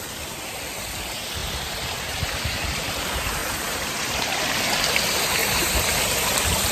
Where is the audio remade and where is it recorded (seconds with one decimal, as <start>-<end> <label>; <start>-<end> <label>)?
0.0-1.4 recorded; 1.4-2.9 remade; 2.9-3.4 recorded; 3.4-4.4 remade; 4.4-5.4 recorded; 5.4-5.9 remade; 5.9-6.7 recorded